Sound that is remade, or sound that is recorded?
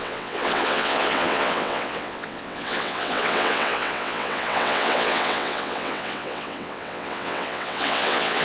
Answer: remade